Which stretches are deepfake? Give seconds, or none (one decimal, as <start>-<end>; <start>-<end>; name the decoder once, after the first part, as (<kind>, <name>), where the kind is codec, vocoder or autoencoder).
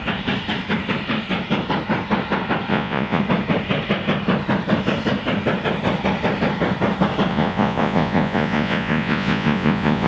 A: 2.7-3.2 (vocoder, Vocos); 7.3-10.1